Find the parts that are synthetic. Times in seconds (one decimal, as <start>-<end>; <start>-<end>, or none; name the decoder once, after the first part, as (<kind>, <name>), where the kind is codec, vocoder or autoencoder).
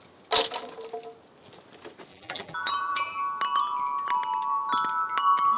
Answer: 2.1-3.2 (vocoder, BigVGAN v2)